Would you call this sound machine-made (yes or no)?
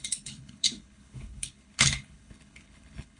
yes